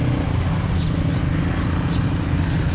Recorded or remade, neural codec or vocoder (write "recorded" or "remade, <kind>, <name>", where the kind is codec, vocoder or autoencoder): recorded